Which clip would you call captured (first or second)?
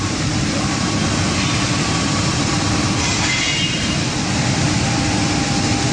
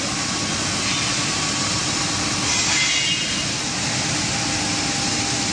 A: second